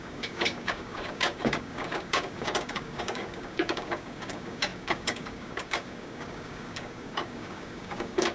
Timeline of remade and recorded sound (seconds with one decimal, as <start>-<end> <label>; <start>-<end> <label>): 0.0-8.3 remade